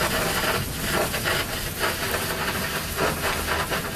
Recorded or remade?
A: recorded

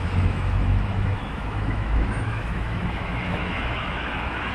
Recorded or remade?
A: remade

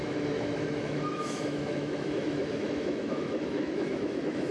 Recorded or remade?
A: remade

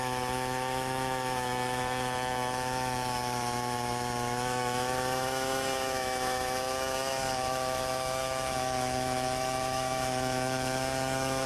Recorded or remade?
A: remade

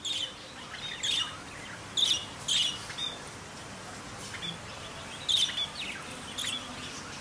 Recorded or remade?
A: recorded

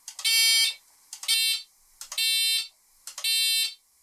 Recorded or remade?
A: recorded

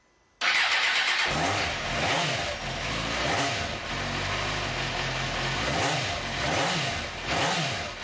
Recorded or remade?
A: recorded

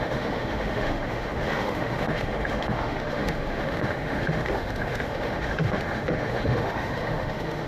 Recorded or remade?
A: remade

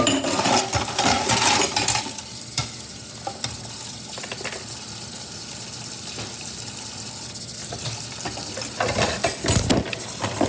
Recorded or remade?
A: recorded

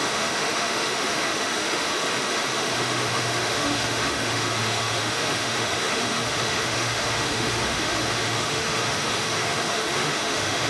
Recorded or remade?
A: remade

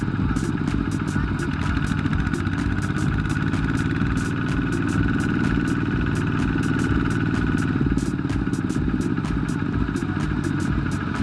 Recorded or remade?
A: recorded